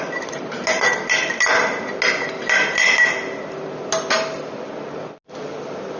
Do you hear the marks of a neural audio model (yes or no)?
no